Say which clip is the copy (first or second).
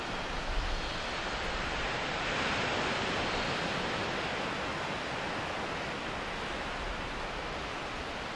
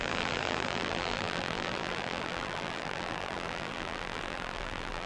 second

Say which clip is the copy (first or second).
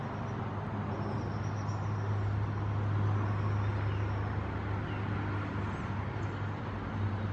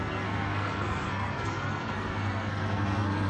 second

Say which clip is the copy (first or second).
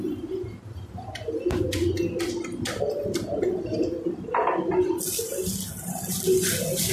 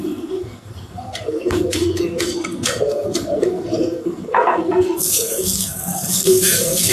second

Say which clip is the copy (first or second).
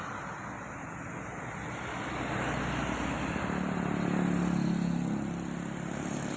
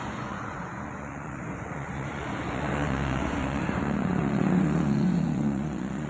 second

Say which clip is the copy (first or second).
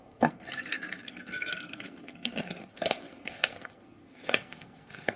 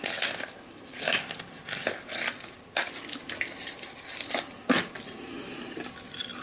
first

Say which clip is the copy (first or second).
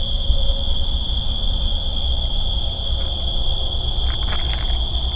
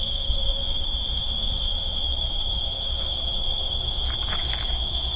second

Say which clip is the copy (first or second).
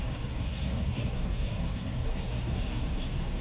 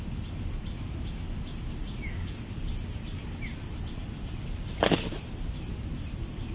first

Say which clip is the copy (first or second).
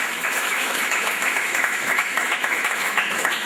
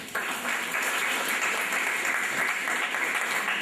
first